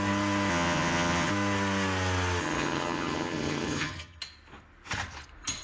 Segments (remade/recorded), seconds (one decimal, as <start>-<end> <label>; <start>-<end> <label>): 0.0-0.5 recorded; 0.5-1.3 remade; 1.3-2.4 recorded; 2.4-4.2 remade; 4.2-5.6 recorded